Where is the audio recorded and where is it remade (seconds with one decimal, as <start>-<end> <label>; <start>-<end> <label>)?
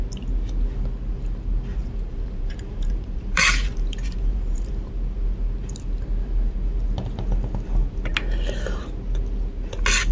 0.0-1.8 recorded; 1.8-4.7 remade; 4.7-10.1 recorded